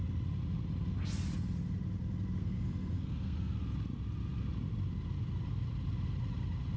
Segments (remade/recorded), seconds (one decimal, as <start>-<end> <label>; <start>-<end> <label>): 0.0-2.4 recorded; 2.4-3.5 remade; 3.5-6.8 recorded